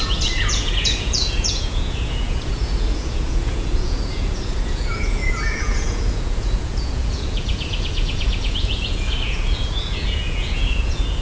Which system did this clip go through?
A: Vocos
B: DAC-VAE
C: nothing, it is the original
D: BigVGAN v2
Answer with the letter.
A